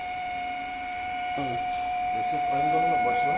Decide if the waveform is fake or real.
fake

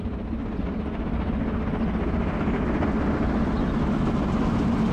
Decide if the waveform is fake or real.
real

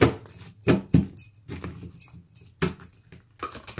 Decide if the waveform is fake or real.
real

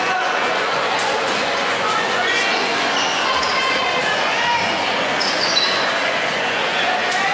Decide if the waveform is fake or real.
fake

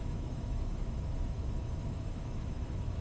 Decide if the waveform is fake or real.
fake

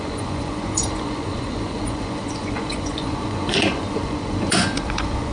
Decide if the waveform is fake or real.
fake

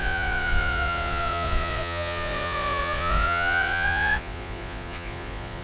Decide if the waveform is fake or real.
fake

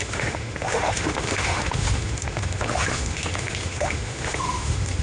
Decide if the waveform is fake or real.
fake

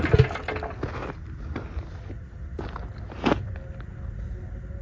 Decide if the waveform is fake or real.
real